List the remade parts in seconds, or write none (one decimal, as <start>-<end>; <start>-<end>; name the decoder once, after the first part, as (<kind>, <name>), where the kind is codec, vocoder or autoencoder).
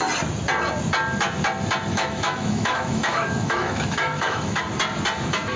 1.9-4.6 (autoencoder, DAC-VAE)